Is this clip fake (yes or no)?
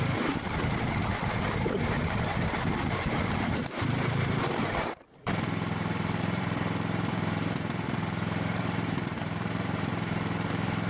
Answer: yes